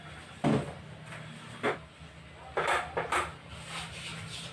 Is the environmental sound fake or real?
real